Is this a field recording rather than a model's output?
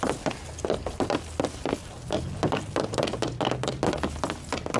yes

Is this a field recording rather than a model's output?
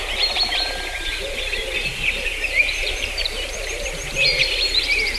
no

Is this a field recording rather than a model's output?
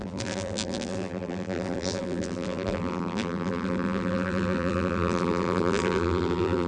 no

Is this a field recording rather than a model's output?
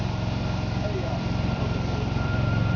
no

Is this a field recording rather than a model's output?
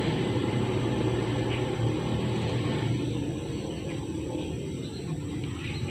no